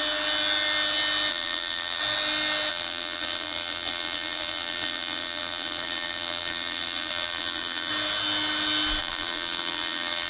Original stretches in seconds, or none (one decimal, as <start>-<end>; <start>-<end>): 0.0-1.3; 2.0-2.7; 7.9-9.0